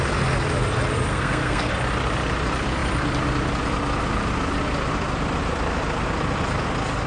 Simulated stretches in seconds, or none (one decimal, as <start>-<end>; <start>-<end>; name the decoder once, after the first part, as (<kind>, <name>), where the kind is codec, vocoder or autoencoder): 1.1-1.7 (codec, SNAC)

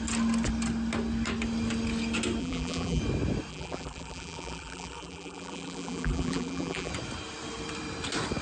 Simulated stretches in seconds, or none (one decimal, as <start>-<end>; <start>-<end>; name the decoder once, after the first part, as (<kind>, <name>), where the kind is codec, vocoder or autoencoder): 2.4-3.0 (vocoder, BigVGAN v2); 3.5-6.9

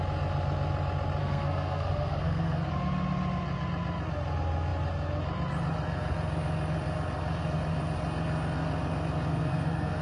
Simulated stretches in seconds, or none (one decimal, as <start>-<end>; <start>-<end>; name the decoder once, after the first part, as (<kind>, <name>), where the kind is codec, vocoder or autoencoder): 1.2-2.7 (codec, SNAC); 9.3-10.0

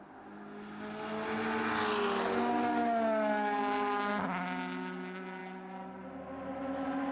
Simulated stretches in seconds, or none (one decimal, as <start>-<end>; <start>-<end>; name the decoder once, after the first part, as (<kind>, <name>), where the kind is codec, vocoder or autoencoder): none